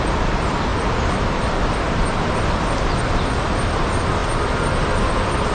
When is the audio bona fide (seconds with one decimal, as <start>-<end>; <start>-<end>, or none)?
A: 0.0-5.5